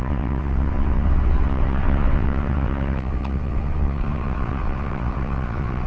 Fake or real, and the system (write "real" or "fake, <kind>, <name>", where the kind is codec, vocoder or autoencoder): fake, vocoder, WaveNeXt